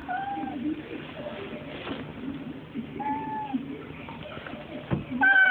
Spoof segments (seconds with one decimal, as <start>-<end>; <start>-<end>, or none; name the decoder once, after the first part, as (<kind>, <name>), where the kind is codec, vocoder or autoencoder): 0.0-1.2 (vocoder, BigVGAN v2); 2.1-4.2